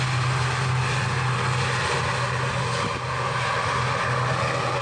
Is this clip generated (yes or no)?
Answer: no